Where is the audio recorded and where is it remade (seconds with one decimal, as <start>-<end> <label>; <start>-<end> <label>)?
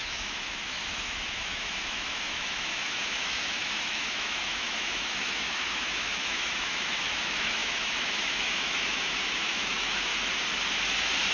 0.0-10.1 remade; 10.1-11.3 recorded